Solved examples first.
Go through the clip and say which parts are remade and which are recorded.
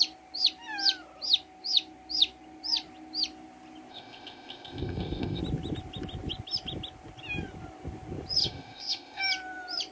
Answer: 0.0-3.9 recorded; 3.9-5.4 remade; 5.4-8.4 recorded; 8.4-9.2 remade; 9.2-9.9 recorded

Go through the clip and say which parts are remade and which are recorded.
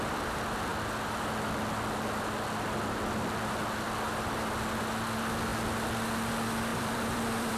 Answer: 0.0-6.7 recorded; 6.7-7.6 remade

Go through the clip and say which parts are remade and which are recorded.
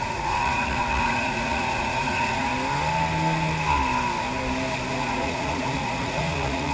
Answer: 0.0-2.5 remade; 2.5-4.9 recorded; 4.9-6.7 remade